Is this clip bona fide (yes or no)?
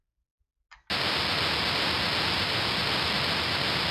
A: yes